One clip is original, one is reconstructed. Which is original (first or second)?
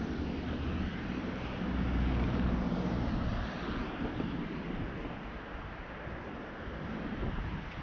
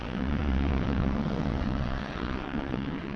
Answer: first